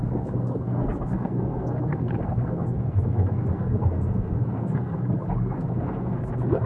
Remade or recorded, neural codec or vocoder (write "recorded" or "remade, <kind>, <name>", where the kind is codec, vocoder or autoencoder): remade, codec, SNAC